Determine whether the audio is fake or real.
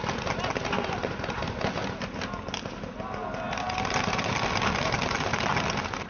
real